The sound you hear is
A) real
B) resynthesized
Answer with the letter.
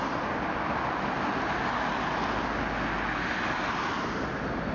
A